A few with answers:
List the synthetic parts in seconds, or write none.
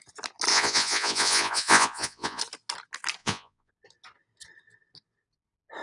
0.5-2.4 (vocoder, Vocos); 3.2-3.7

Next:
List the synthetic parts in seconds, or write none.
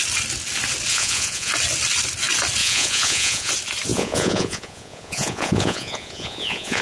0.9-1.5 (vocoder, Vocos); 2.6-3.5; 3.9-6.8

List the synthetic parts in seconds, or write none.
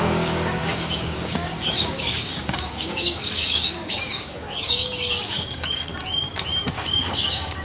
0.0-5.9 (codec, DAC); 6.6-7.6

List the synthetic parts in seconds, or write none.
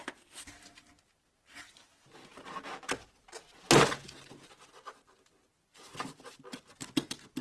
none